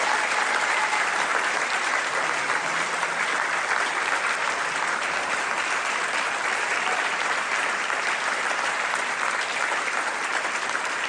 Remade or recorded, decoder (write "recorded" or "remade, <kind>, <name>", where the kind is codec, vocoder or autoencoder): recorded